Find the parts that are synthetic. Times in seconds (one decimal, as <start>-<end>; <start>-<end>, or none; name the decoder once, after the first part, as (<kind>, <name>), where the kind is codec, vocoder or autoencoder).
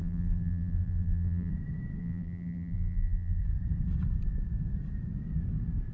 0.0-1.5 (vocoder, BigVGAN v2); 2.0-3.4